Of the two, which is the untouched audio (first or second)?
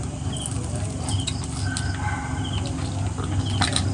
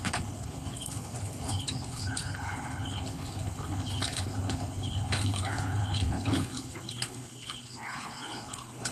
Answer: first